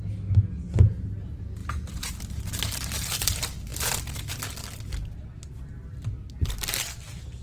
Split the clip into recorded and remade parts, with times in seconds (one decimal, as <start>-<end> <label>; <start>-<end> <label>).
0.0-1.6 recorded; 1.6-2.7 remade; 2.7-3.7 recorded; 3.7-4.3 remade; 4.3-7.4 recorded